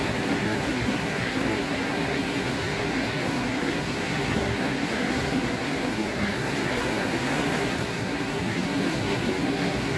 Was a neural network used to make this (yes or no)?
yes